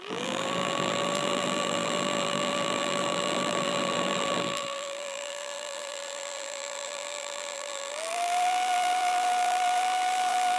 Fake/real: fake